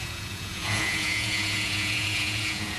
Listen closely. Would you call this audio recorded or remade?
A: remade